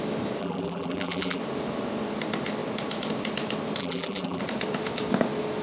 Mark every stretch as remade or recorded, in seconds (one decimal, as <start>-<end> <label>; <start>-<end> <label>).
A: 0.0-0.4 recorded; 0.4-1.4 remade; 1.4-3.8 recorded; 3.8-4.4 remade; 4.4-5.6 recorded